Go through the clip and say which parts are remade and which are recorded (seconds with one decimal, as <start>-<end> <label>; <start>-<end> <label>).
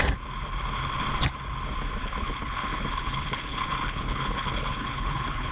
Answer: 0.0-2.0 recorded; 2.0-5.5 remade